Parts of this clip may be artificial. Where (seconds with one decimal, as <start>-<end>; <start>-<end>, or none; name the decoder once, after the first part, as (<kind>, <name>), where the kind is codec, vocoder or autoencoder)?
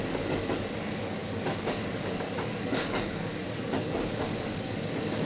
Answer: 0.0-5.3 (codec, DAC)